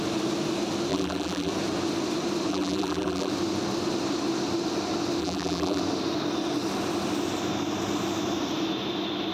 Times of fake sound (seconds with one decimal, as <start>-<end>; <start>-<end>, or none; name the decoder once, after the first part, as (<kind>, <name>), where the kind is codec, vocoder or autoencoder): 0.9-1.5 (vocoder, BigVGAN v2); 2.5-3.3; 5.2-5.8